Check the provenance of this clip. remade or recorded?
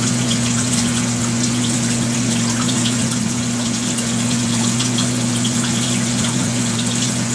remade